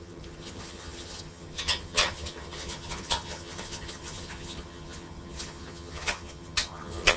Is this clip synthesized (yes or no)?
yes